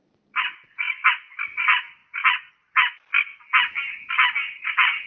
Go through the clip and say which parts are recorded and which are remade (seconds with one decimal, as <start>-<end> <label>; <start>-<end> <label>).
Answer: 0.0-1.1 remade; 1.1-5.1 recorded